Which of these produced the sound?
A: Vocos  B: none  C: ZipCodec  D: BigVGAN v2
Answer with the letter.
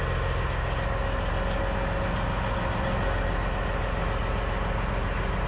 B